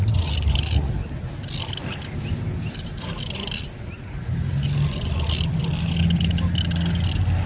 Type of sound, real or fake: real